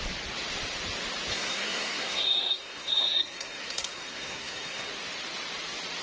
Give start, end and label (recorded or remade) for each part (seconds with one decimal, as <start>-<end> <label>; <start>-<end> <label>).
0.0-1.3 recorded; 1.3-4.9 remade; 4.9-6.0 recorded